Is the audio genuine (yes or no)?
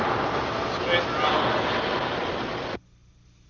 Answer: yes